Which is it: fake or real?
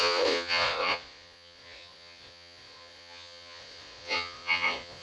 fake